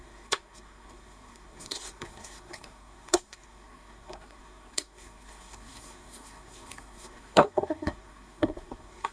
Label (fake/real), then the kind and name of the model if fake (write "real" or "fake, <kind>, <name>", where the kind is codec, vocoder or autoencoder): fake, codec, SNAC